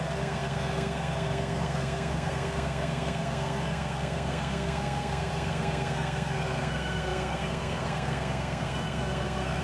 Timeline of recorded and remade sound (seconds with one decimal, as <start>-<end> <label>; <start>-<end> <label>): 0.0-9.6 remade